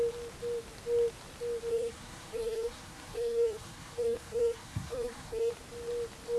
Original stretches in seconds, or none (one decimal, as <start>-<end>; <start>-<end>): 0.0-1.7; 5.5-6.4